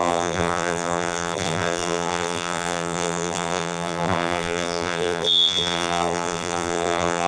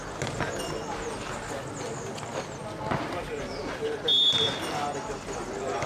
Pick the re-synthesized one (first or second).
first